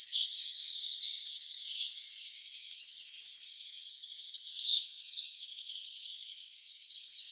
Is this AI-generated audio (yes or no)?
yes